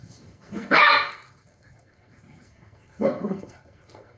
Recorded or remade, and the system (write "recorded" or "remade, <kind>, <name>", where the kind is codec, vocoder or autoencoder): remade, codec, SNAC